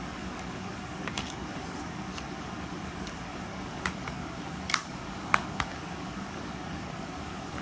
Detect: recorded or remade remade